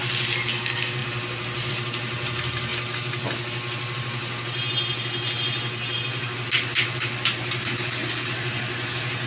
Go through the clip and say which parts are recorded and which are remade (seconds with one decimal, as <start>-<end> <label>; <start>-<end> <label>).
0.0-9.3 recorded